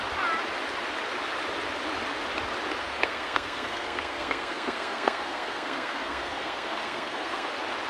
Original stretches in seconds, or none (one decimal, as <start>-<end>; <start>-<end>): 0.0-2.8; 7.5-7.9